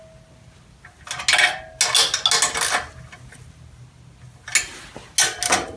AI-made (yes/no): no